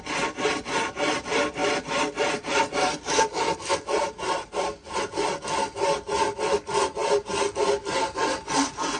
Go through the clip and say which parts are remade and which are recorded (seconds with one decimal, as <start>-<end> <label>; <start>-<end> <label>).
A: 0.0-9.0 recorded

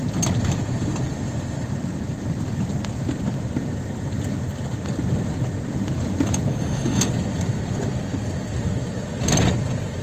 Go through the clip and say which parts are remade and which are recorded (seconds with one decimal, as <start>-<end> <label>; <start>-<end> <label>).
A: 0.0-6.5 recorded; 6.5-7.1 remade; 7.1-10.0 recorded

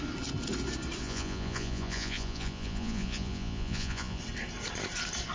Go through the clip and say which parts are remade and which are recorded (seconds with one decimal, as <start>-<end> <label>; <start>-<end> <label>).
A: 0.0-1.0 recorded; 1.0-4.2 remade; 4.2-5.3 recorded

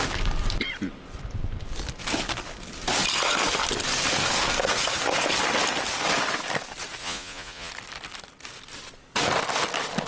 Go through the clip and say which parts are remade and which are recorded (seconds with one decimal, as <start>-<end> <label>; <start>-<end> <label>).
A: 0.0-7.0 recorded; 7.0-7.7 remade; 7.7-10.1 recorded